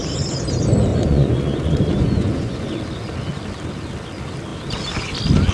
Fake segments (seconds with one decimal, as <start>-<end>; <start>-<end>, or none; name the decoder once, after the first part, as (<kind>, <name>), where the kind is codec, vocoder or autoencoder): 0.9-2.7 (vocoder, Vocos)